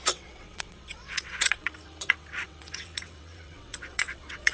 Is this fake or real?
fake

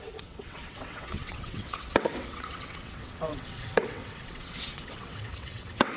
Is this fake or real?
fake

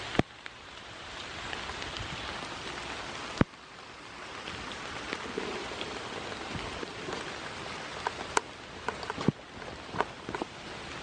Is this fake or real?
real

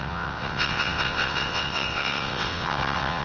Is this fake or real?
fake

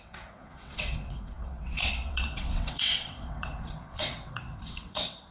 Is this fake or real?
fake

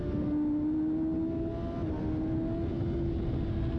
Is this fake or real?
real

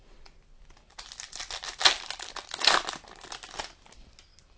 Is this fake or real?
real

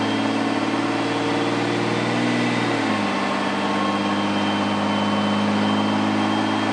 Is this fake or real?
real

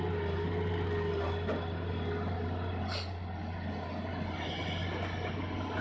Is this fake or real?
real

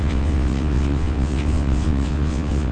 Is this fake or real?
fake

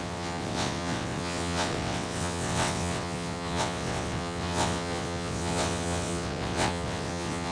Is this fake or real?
fake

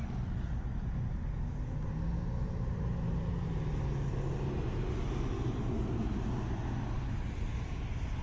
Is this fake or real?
real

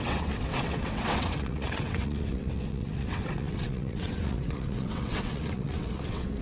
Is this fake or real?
fake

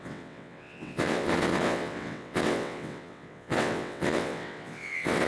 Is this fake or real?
fake